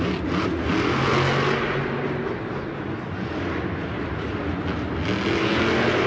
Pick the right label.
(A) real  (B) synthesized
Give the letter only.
A